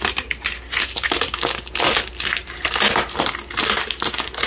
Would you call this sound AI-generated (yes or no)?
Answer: no